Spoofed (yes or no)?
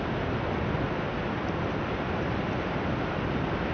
no